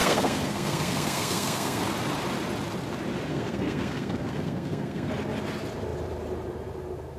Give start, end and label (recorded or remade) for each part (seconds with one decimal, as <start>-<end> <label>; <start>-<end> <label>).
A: 0.0-1.8 remade; 1.8-3.3 recorded; 3.3-5.1 remade; 5.1-7.2 recorded